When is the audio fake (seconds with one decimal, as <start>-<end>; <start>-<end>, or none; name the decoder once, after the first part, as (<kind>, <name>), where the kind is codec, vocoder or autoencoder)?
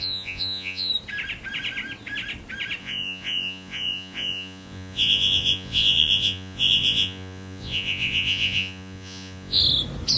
0.0-0.9 (vocoder, Vocos); 2.8-9.6